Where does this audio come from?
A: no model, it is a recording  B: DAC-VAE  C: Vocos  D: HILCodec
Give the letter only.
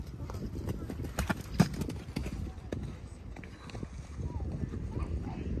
A